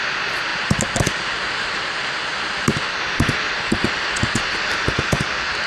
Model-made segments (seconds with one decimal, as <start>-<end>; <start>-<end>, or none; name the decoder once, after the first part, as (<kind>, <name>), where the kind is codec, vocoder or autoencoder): none